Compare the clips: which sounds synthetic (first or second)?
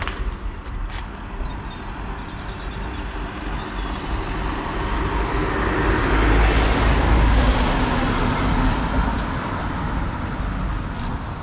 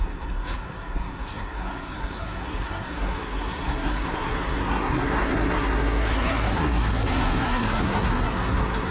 second